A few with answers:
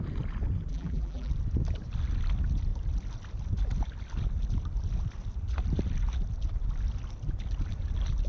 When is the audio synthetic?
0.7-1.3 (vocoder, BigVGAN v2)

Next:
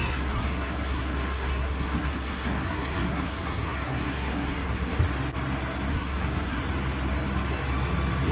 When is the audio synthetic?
0.0-5.0 (codec, SNAC); 5.9-6.6

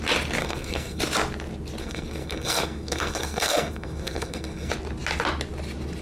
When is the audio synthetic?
0.4-1.0 (codec, SNAC); 1.8-4.7

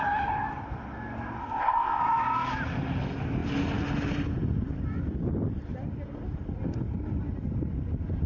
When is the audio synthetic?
1.4-2.0 (codec, ZipCodec)

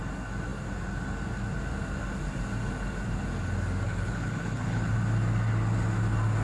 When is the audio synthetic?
3.9-4.9 (codec, HILCodec)

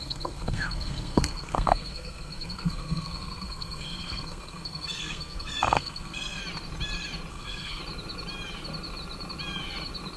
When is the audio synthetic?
0.0-6.4 (codec, SNAC); 7.3-7.8